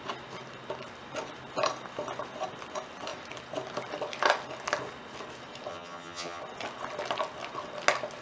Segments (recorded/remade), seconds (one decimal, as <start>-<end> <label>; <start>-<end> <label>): 0.0-5.7 recorded; 5.7-6.4 remade; 6.4-8.2 recorded